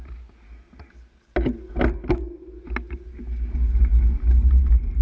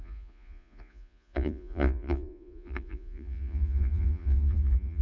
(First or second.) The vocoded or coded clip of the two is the second